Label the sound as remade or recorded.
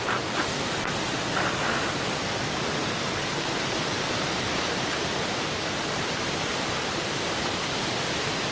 remade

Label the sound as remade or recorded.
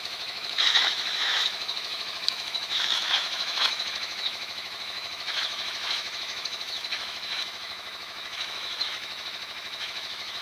remade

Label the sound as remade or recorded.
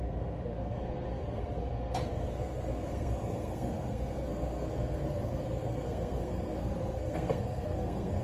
remade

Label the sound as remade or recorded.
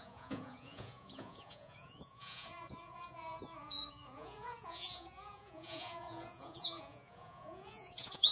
remade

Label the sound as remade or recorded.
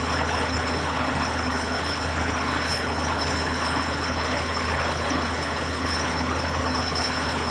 remade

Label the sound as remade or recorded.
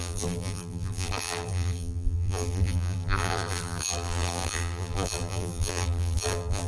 remade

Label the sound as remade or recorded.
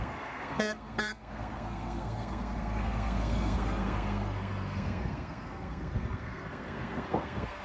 remade